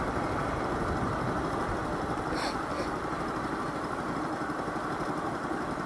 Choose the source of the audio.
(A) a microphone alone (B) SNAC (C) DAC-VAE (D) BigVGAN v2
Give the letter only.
A